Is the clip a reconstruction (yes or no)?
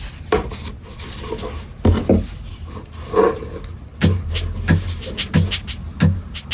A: no